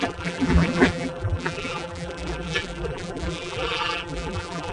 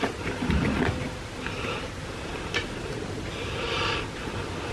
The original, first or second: second